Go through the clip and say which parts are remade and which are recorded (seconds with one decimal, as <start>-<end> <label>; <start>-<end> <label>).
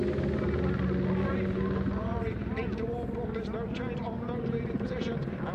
0.0-5.5 recorded